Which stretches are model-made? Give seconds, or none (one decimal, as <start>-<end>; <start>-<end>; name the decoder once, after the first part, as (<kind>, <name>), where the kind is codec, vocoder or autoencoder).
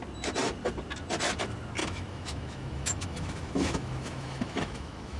1.8-5.2 (autoencoder, DAC-VAE)